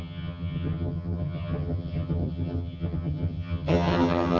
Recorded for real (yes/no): no